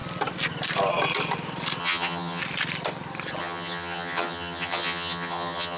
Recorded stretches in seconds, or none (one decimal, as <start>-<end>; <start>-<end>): 0.0-1.8; 2.4-3.4